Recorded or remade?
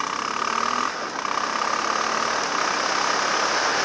recorded